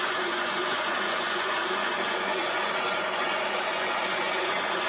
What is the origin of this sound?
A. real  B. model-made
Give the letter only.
B